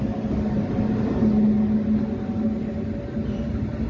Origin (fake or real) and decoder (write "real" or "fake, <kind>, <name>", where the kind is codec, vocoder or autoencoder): real